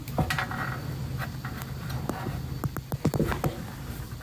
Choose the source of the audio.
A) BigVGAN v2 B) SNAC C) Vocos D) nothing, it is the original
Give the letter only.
A